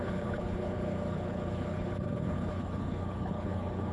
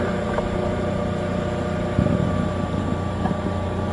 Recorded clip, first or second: second